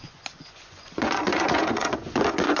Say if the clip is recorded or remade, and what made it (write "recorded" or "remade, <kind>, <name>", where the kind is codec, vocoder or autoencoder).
remade, vocoder, Vocos